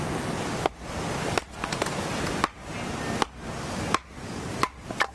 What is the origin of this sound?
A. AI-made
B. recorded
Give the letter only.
B